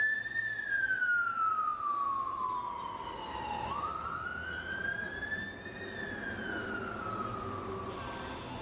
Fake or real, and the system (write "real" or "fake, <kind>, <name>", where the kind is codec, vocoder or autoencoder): real